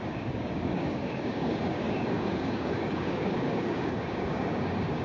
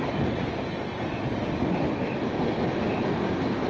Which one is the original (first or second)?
second